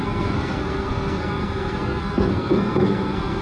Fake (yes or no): yes